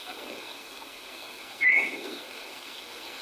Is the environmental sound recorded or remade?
remade